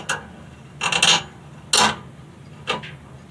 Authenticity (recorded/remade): recorded